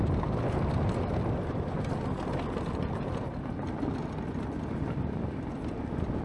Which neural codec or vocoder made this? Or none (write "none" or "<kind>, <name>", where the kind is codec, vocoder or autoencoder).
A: none